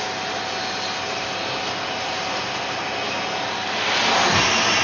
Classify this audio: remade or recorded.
recorded